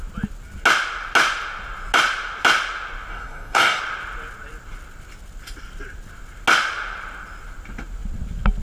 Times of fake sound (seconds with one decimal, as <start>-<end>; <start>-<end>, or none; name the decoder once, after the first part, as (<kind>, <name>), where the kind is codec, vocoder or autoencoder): 3.1-3.8 (codec, DAC)